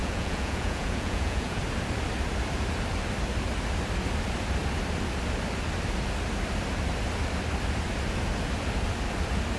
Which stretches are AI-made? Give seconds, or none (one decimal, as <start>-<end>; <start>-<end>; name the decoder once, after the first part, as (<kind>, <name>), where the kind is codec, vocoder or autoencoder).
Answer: 0.0-1.6 (vocoder, Vocos)